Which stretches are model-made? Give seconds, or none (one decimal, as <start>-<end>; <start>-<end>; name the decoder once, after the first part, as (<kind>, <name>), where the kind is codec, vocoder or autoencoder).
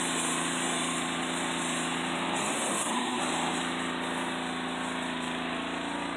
2.4-3.2 (codec, SNAC)